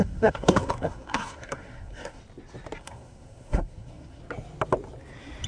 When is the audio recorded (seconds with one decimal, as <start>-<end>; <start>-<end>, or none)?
2.2-2.8; 4.2-5.5